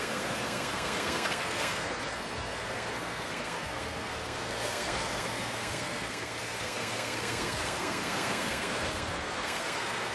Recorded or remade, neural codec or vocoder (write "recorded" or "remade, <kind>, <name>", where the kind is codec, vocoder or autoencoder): remade, codec, SNAC